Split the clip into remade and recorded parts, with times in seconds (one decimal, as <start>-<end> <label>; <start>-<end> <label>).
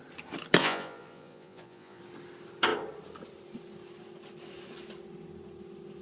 0.0-0.6 recorded; 0.6-2.0 remade; 2.0-6.0 recorded